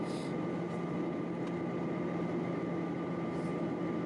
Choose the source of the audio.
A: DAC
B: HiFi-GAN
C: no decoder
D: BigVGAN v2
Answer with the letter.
C